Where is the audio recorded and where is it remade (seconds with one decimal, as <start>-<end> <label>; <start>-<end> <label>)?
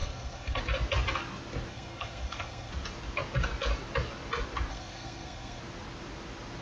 0.0-0.6 remade; 0.6-1.7 recorded; 1.7-2.7 remade; 2.7-4.7 recorded; 4.7-5.6 remade; 5.6-6.6 recorded